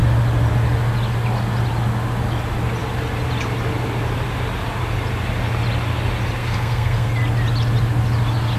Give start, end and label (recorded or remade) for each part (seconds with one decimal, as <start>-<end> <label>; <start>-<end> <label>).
0.0-6.4 recorded; 6.4-7.1 remade; 7.1-8.6 recorded